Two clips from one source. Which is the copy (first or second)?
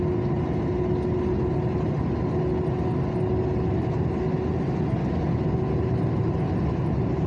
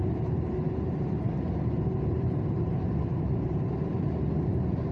second